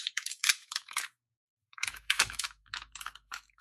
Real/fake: fake